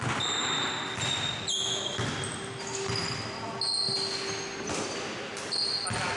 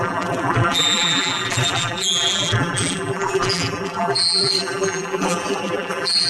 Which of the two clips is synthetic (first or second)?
second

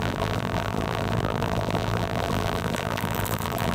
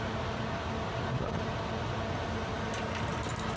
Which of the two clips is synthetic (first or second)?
first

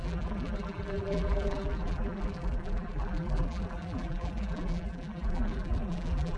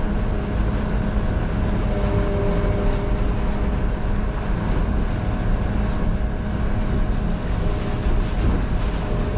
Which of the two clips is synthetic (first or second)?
first